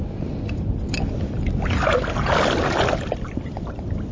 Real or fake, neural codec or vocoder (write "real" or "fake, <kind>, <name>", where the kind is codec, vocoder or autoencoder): real